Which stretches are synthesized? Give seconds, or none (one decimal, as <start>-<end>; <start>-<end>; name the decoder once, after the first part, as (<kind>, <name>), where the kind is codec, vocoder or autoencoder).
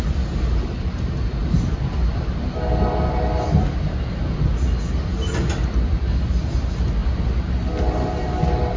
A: none